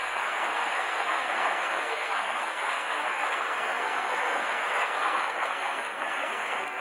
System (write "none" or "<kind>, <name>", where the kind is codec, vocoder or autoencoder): codec, SNAC